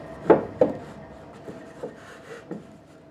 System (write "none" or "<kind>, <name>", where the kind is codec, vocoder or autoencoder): none